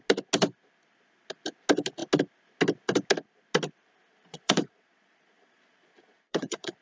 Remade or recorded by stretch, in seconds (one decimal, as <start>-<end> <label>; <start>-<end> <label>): 0.0-4.1 recorded; 4.1-6.8 remade